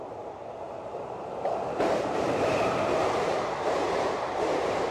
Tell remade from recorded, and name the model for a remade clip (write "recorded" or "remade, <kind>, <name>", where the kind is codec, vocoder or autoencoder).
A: remade, vocoder, BigVGAN v2